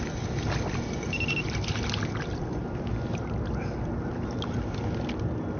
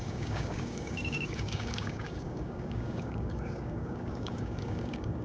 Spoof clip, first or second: second